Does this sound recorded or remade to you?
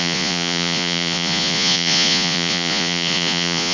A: remade